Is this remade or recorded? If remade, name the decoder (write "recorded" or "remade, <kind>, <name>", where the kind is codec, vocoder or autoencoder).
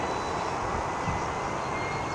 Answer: recorded